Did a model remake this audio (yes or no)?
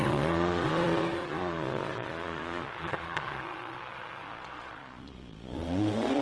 yes